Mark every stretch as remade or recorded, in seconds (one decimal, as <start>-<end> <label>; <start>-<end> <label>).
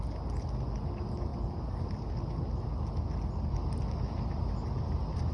0.0-5.3 recorded